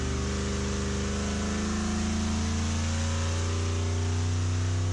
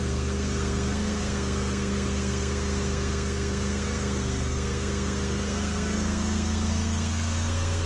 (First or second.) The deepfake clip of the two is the second